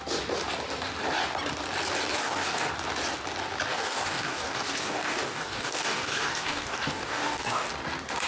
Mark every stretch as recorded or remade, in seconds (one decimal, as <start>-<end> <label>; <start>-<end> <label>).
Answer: 0.0-2.2 recorded; 2.2-2.7 remade; 2.7-3.7 recorded; 3.7-7.7 remade; 7.7-8.3 recorded